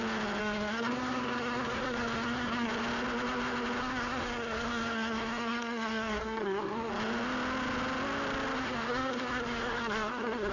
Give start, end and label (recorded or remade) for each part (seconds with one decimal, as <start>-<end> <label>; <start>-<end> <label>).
0.0-0.4 recorded; 0.4-2.7 remade; 2.7-3.8 recorded; 3.8-6.9 remade; 6.9-8.6 recorded; 8.6-10.5 remade